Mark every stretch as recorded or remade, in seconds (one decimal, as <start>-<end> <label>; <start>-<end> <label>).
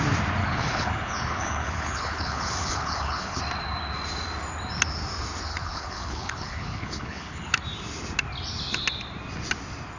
0.0-0.4 recorded; 0.4-3.4 remade; 3.4-5.5 recorded; 5.5-7.5 remade; 7.5-10.0 recorded